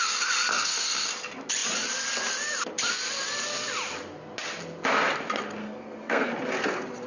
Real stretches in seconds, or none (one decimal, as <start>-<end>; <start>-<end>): 0.0-0.5; 1.1-5.6; 6.3-7.1